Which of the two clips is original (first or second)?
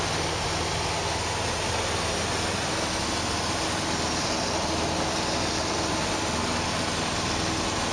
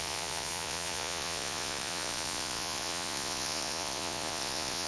first